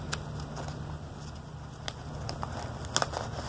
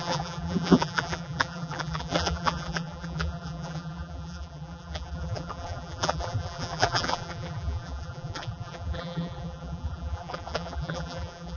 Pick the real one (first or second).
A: first